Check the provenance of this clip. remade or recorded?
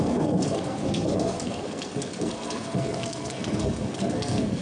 remade